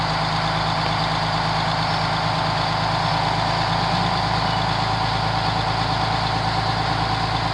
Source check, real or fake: real